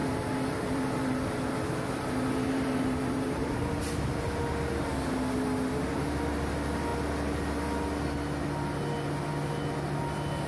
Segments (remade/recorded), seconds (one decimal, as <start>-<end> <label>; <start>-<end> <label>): 0.0-4.4 remade; 4.4-10.5 recorded